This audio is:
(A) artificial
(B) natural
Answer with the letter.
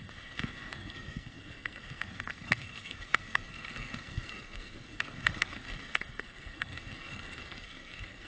A